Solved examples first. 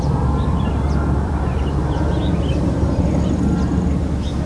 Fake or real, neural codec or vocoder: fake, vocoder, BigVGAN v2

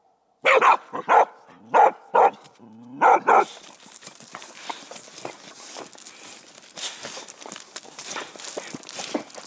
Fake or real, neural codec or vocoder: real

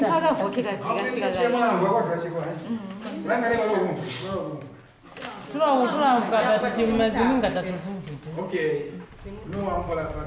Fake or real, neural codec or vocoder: real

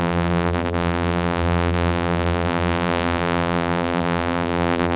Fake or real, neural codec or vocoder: fake, vocoder, BigVGAN v2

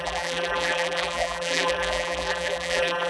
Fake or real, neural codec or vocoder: fake, vocoder, BigVGAN v2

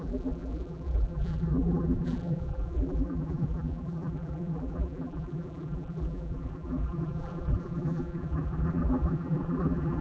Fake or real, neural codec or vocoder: fake, vocoder, BigVGAN v2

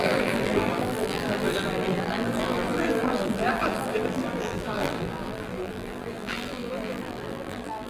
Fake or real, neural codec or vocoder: fake, vocoder, BigVGAN v2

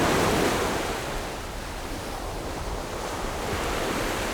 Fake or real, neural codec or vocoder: fake, vocoder, BigVGAN v2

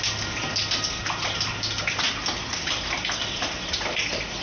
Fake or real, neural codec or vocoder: real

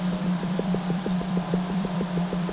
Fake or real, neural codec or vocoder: fake, vocoder, BigVGAN v2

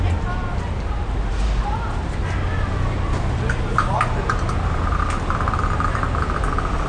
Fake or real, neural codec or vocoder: real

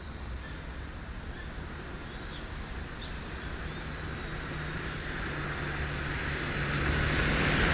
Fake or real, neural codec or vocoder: real